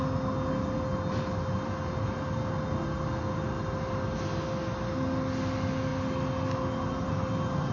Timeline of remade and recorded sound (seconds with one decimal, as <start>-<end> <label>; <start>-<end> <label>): 0.0-7.7 recorded